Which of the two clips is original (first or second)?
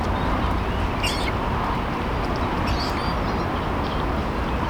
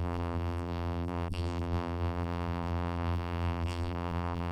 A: first